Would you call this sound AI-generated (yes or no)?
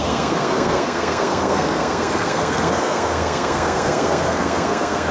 yes